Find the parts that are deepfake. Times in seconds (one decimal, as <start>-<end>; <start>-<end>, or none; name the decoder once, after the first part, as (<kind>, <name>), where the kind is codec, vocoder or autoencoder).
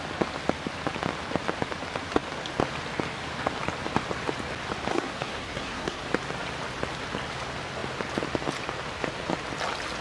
4.9-6.0 (codec, SNAC)